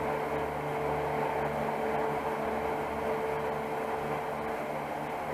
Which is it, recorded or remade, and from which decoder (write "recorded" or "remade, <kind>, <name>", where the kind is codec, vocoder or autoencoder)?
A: recorded